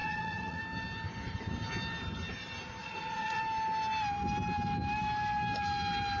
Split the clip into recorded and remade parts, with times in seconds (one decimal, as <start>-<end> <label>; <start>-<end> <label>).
0.0-0.6 remade; 0.6-2.8 recorded; 2.8-3.4 remade; 3.4-6.2 recorded